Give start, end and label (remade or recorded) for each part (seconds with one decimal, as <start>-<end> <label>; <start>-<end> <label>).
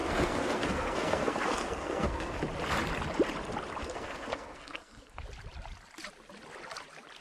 0.0-2.4 remade; 2.4-3.8 recorded; 3.8-5.2 remade; 5.2-7.2 recorded